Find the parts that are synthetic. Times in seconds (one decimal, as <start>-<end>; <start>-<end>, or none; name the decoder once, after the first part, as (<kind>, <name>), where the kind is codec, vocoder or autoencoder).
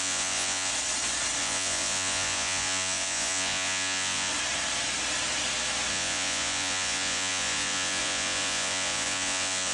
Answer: 0.0-0.7 (vocoder, Vocos); 1.4-4.3; 5.9-9.7